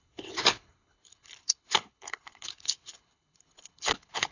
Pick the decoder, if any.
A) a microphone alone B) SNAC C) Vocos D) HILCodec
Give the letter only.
D